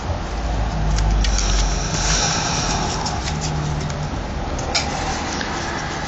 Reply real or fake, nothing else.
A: real